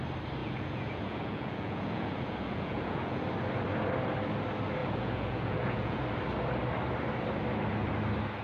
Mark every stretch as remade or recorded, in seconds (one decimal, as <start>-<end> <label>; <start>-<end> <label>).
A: 0.0-0.4 recorded; 0.4-3.2 remade; 3.2-4.8 recorded; 4.8-6.0 remade; 6.0-8.4 recorded